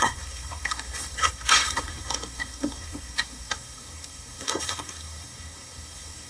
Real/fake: fake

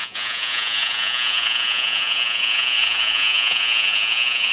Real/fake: fake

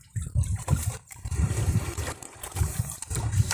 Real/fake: fake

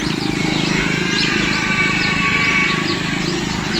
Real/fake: real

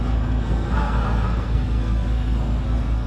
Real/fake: fake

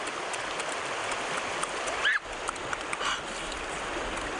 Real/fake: real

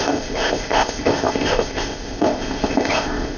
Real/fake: fake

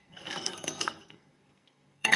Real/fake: fake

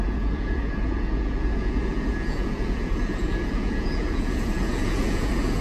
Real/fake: fake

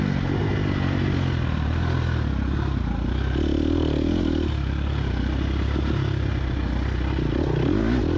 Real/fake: real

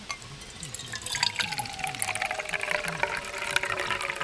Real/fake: real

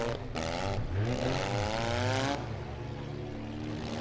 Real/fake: real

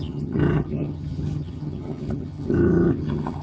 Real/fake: fake